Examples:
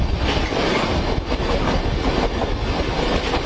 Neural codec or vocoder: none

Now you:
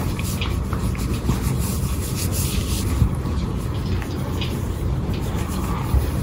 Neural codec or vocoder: none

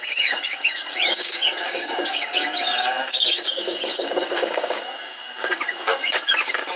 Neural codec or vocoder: codec, DAC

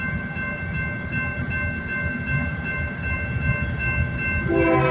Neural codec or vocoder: none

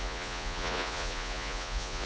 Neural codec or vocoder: vocoder, Vocos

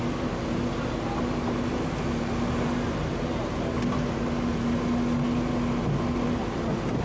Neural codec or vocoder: none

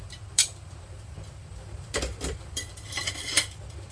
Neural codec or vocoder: vocoder, BigVGAN v2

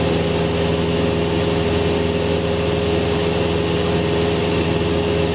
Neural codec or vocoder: none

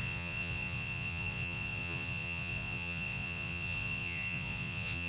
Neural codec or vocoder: vocoder, Vocos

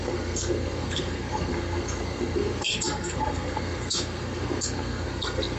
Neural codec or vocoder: codec, SNAC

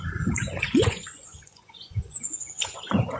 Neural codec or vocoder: vocoder, Vocos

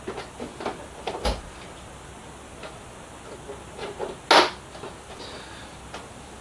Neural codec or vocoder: none